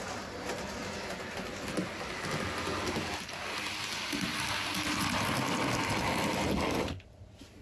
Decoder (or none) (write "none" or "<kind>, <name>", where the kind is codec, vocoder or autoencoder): none